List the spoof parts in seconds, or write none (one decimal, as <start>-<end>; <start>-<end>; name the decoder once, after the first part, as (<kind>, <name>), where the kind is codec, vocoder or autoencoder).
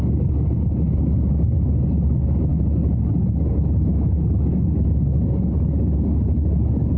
none